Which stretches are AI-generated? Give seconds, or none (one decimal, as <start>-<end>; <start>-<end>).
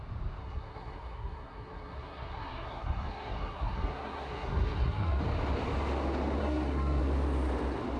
0.4-5.2; 6.4-7.0